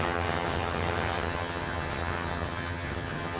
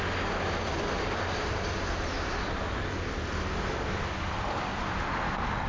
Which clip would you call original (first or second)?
second